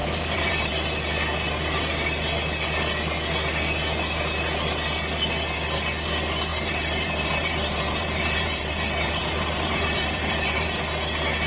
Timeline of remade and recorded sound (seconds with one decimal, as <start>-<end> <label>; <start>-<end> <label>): 0.0-0.7 remade; 0.7-6.5 recorded; 6.5-10.8 remade; 10.8-11.5 recorded